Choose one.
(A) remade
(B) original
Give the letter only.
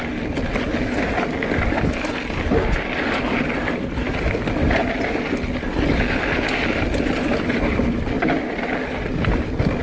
B